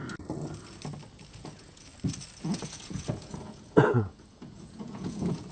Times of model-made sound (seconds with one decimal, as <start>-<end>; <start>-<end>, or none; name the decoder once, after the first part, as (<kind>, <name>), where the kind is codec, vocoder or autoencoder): 1.3-1.9 (vocoder, Vocos); 2.4-5.5